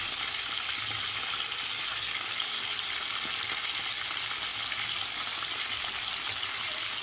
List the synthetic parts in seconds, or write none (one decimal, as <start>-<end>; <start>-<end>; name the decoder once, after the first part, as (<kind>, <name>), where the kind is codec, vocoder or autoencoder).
1.9-2.6 (codec, DAC)

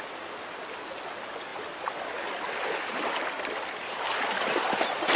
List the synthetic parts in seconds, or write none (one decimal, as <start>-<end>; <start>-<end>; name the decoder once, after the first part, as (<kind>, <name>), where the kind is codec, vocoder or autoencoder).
none

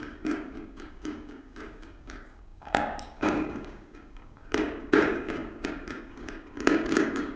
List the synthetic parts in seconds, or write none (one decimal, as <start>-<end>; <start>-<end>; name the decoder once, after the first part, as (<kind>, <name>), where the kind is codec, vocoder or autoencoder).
0.0-7.4 (codec, DAC)